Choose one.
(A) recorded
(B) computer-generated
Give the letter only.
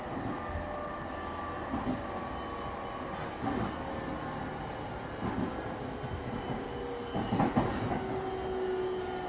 A